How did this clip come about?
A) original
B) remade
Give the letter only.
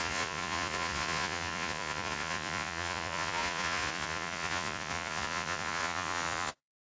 B